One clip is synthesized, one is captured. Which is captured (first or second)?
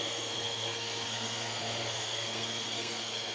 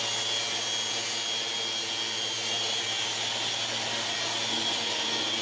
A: second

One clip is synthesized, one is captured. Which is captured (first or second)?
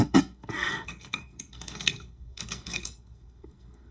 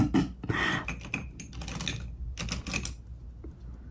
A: second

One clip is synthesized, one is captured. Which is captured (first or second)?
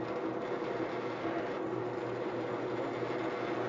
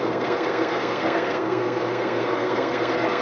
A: first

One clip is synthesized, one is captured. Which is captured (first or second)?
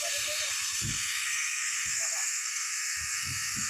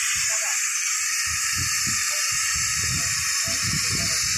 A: second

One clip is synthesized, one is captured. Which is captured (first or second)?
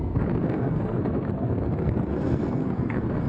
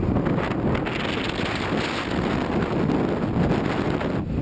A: second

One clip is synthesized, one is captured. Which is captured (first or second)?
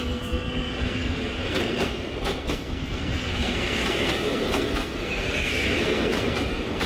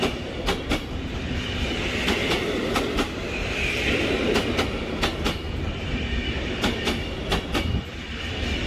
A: second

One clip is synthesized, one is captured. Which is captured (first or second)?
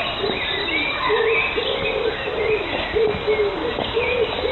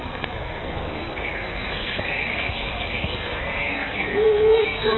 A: first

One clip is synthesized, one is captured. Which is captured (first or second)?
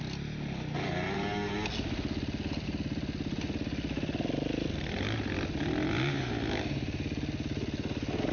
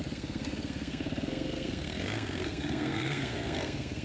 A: first